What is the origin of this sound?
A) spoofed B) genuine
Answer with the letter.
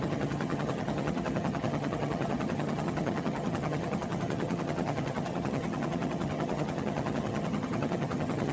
A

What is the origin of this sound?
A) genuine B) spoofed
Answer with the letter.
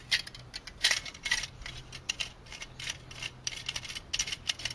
A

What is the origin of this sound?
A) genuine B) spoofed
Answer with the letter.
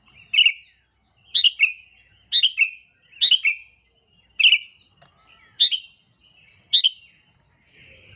A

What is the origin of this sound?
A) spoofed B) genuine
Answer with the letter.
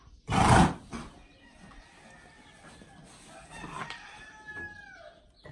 B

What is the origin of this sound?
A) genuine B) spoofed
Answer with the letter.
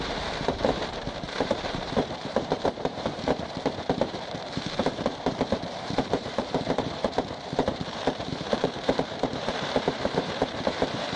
B